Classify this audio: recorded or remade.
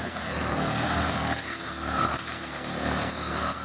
remade